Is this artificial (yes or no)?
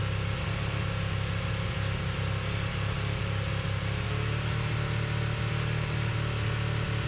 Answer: no